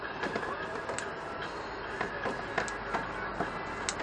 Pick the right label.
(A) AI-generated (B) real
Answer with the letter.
B